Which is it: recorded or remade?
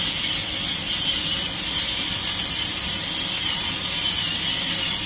remade